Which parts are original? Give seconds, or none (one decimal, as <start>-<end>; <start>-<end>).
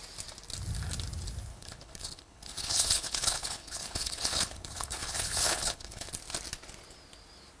0.0-1.5; 6.1-7.6